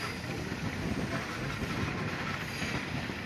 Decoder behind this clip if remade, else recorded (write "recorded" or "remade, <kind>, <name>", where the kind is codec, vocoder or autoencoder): recorded